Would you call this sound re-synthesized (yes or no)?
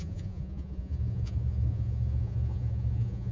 yes